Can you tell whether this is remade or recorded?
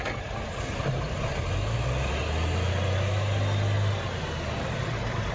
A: recorded